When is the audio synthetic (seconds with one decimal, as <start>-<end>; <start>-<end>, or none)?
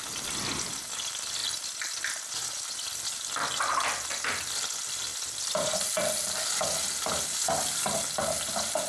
none